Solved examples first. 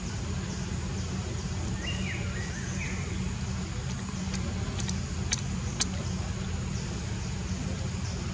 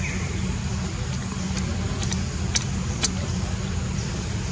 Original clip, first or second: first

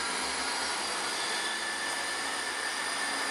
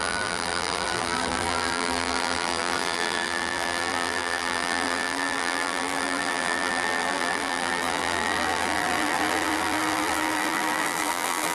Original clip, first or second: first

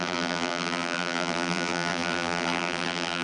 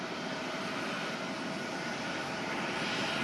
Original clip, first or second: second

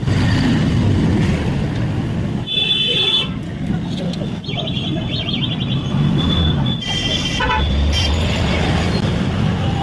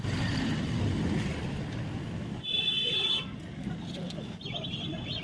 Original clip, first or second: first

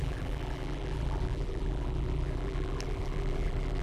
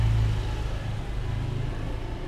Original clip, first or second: second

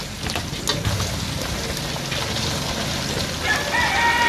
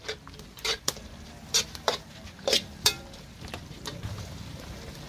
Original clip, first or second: first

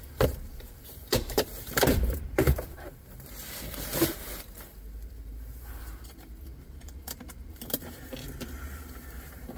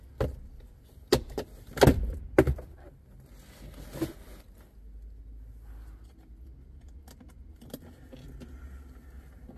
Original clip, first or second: second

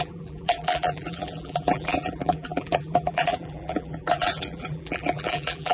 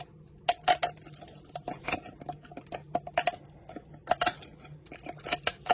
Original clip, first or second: second